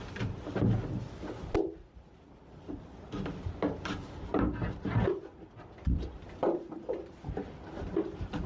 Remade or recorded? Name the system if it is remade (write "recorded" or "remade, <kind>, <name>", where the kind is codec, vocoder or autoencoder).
recorded